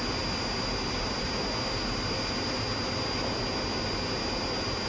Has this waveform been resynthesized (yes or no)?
no